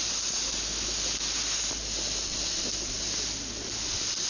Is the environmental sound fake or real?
real